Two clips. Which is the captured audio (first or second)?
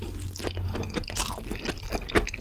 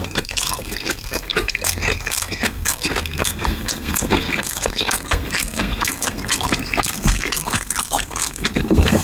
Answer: first